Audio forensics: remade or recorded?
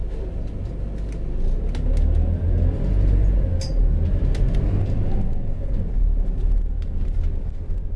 recorded